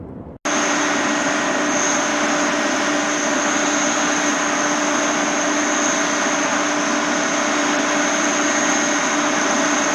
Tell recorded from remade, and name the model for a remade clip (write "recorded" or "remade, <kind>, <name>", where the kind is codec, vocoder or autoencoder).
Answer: recorded